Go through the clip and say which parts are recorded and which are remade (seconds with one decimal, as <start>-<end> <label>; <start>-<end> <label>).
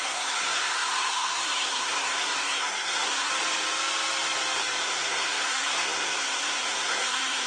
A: 0.0-3.3 remade; 3.3-4.8 recorded; 4.8-7.5 remade